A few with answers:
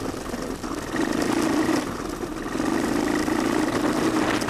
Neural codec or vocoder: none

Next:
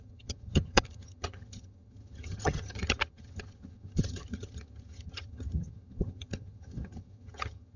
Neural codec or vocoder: vocoder, HiFi-GAN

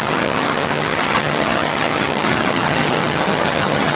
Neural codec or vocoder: vocoder, HiFi-GAN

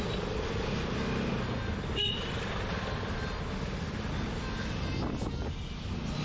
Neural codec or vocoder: none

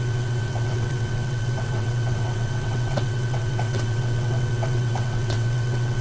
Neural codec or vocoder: vocoder, WaveNeXt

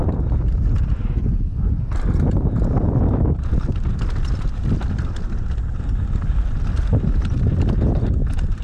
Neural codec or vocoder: none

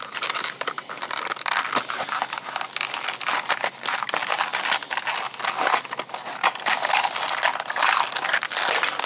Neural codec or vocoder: none